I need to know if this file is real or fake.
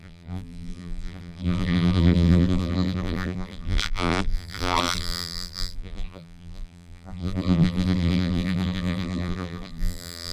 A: fake